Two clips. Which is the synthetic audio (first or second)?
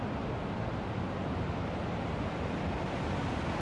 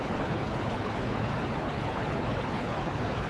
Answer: second